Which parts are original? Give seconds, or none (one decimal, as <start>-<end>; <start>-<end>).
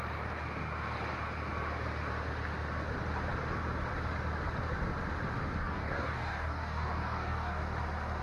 0.0-5.6; 7.6-8.2